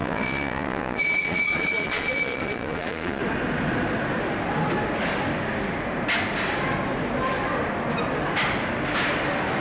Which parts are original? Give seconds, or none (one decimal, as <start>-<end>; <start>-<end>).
3.2-9.6